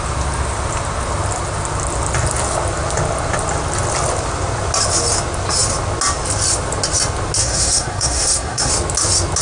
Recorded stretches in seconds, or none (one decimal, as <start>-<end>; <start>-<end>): 0.0-7.4; 8.7-9.4